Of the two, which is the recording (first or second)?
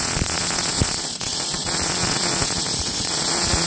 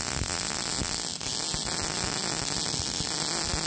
second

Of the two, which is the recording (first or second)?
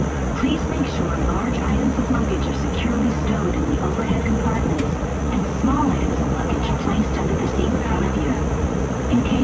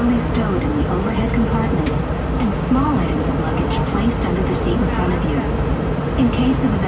second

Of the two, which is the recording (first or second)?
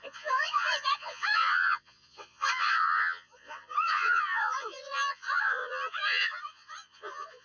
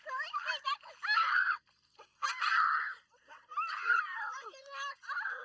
second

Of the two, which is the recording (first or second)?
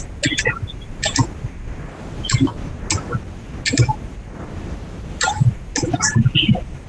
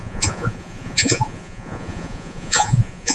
first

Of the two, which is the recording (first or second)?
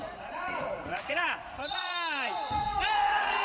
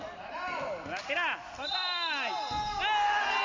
second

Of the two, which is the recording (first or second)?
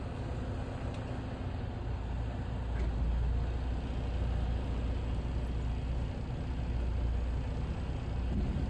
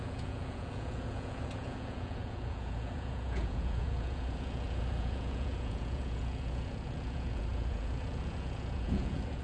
first